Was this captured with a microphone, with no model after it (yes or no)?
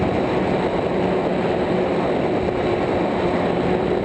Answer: no